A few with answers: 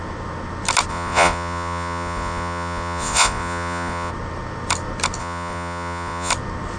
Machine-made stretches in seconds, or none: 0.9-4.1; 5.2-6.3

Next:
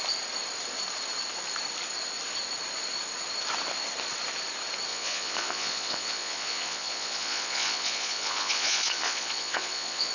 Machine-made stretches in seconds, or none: 4.9-10.1